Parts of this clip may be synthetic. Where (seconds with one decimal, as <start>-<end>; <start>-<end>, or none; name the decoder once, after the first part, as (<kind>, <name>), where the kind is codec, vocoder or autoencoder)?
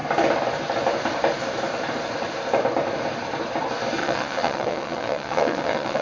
4.0-6.0 (vocoder, WaveNeXt)